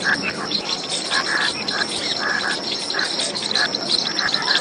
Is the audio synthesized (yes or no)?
yes